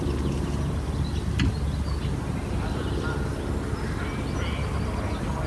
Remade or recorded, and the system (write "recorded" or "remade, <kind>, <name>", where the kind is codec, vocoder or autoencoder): recorded